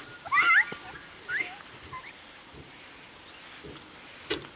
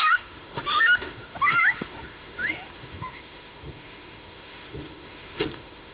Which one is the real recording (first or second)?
first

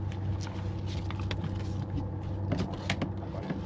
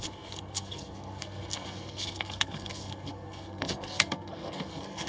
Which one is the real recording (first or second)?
first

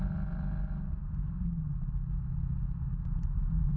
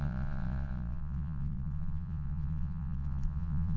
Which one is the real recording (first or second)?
first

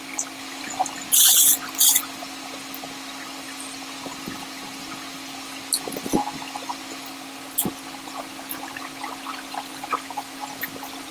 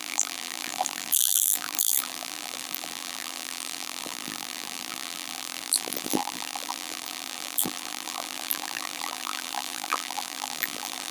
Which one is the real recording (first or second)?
first